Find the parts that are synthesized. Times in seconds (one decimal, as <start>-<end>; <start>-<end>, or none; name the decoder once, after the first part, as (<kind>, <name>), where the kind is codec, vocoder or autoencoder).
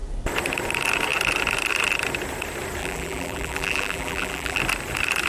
2.8-4.6 (vocoder, BigVGAN v2)